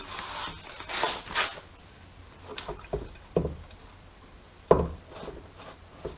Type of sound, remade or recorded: recorded